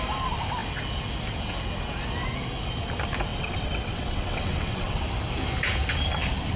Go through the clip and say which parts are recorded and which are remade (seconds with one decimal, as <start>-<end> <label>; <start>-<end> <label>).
0.0-3.3 recorded; 3.3-5.0 remade; 5.0-6.6 recorded